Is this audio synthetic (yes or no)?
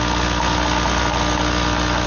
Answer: no